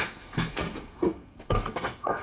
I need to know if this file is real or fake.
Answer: fake